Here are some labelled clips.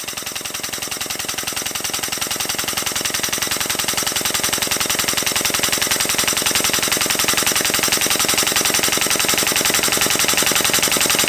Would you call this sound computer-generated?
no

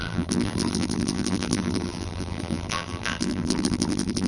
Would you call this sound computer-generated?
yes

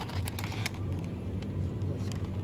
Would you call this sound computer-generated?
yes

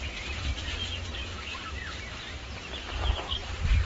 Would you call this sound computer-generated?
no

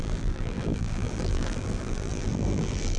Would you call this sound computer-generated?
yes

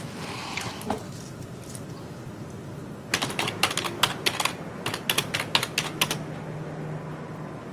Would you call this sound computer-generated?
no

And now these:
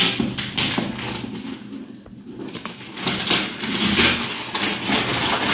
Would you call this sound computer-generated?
no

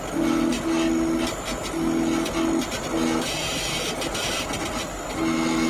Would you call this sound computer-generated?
no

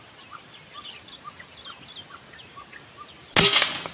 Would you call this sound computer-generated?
no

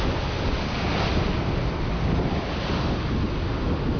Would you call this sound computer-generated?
no